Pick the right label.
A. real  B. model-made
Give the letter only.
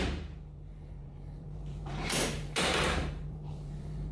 B